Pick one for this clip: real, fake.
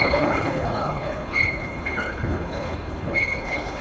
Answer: fake